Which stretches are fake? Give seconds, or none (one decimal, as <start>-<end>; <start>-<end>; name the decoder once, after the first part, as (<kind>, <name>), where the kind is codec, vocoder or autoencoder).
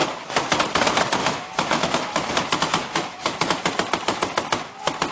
1.2-2.3 (autoencoder, DAC-VAE); 2.8-3.4